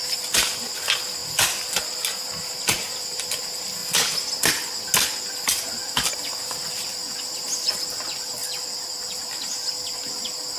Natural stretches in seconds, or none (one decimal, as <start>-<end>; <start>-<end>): 0.0-10.6